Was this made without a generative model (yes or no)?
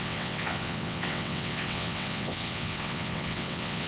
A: no